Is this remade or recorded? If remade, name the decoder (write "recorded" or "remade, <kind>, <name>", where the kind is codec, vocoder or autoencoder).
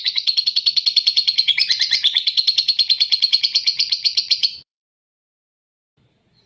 remade, vocoder, Vocos